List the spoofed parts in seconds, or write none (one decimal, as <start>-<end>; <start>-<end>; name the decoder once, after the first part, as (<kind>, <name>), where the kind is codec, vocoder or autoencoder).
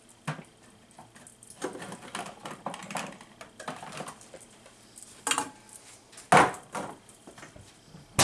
none